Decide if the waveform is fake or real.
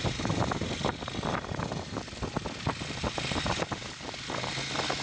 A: real